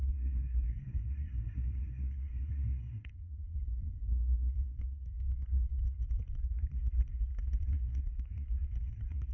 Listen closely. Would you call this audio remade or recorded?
remade